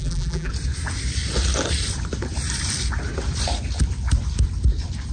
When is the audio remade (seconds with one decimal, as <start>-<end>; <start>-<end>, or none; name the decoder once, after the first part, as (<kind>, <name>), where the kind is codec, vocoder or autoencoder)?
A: 0.0-0.5 (vocoder, BigVGAN v2)